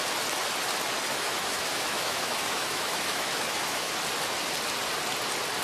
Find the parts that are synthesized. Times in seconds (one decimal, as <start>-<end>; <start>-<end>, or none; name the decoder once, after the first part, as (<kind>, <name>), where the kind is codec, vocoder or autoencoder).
1.1-3.9 (autoencoder, DAC-VAE)